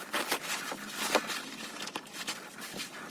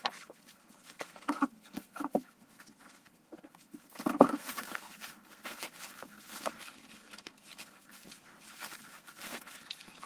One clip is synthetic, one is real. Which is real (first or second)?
first